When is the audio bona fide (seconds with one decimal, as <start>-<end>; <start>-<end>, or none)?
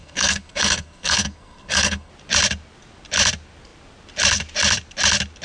2.1-5.4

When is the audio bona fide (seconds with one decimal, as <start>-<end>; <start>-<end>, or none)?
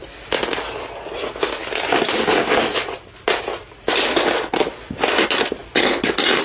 0.0-6.4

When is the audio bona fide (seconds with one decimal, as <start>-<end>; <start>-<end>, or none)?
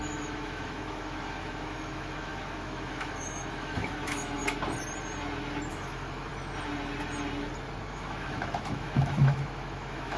4.4-5.7; 6.3-7.8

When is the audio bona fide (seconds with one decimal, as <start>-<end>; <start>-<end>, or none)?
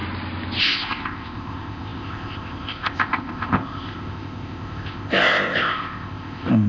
0.0-0.6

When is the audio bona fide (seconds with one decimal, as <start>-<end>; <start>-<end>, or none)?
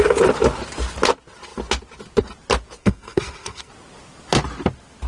0.0-2.8; 3.7-5.1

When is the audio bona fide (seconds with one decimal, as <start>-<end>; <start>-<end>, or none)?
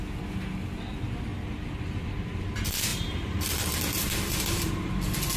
0.0-2.9; 4.9-5.4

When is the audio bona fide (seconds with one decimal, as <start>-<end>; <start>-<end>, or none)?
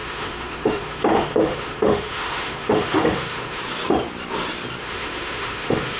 3.6-4.8